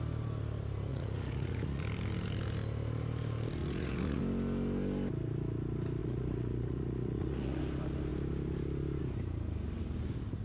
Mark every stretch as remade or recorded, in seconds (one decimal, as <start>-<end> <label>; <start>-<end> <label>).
0.0-0.9 recorded; 0.9-1.8 remade; 1.8-3.6 recorded; 3.6-4.2 remade; 4.2-6.0 recorded; 6.0-7.6 remade; 7.6-10.4 recorded